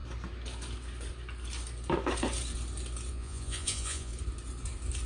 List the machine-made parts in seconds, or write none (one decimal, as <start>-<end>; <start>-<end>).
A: 3.1-4.1